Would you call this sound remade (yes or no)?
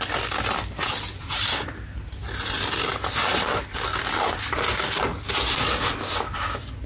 no